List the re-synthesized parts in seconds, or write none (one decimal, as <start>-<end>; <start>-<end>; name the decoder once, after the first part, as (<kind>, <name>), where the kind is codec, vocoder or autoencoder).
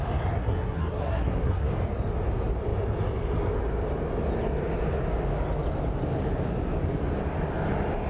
0.4-1.7 (codec, SNAC)